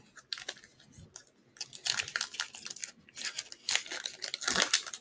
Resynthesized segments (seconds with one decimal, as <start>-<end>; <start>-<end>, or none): 2.8-3.5